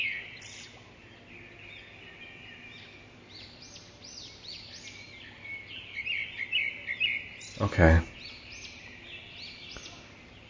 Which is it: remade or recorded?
recorded